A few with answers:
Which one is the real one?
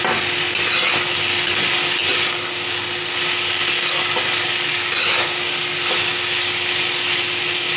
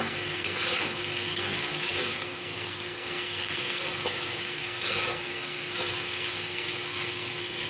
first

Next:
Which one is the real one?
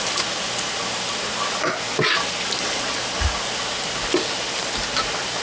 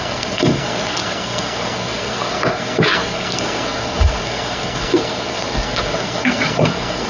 first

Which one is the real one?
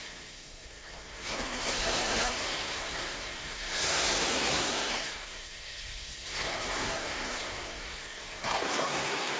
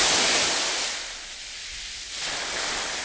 second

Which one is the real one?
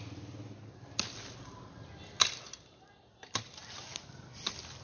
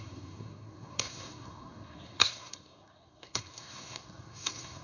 first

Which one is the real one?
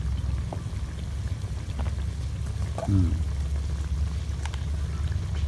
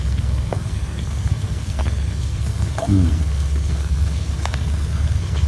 first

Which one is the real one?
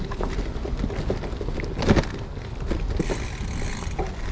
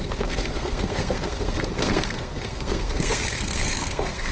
first